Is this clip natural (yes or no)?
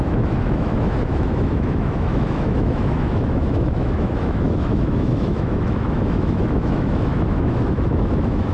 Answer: no